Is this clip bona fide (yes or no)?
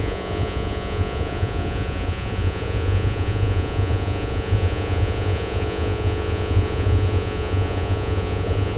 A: no